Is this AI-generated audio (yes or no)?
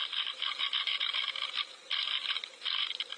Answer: no